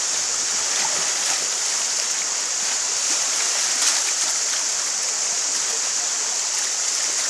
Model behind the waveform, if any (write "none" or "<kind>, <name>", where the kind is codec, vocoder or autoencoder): none